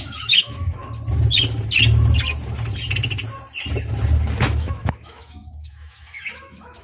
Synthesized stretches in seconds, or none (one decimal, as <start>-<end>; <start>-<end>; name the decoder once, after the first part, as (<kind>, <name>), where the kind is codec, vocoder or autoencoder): 0.0-0.8 (autoencoder, DAC-VAE); 4.4-6.8